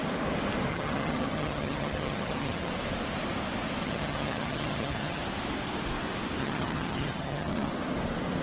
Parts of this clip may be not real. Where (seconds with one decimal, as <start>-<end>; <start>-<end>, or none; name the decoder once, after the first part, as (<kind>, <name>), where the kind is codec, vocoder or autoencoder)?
0.7-2.7 (vocoder, HiFi-GAN); 3.8-5.2; 6.4-7.7